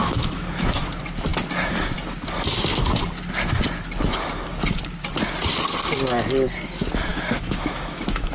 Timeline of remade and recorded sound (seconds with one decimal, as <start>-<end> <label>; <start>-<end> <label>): 0.0-0.9 remade; 0.9-7.1 recorded; 7.1-8.3 remade